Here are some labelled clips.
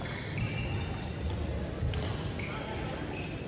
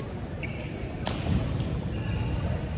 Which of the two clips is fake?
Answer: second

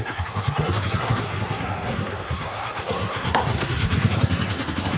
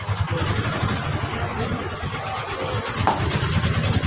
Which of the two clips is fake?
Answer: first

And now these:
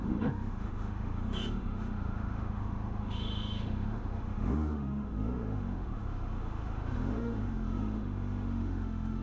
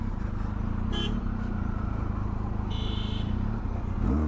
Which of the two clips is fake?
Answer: first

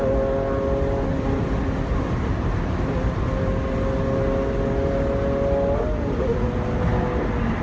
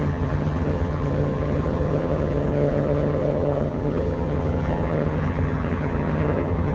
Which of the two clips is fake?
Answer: second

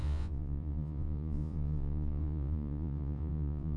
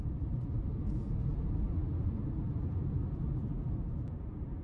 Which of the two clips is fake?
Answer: first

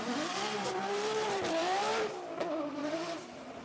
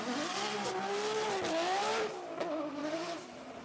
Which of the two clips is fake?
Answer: first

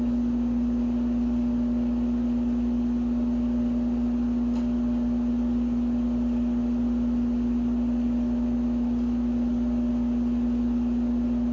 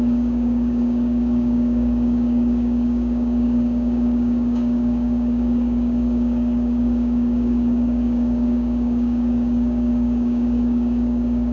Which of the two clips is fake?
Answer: second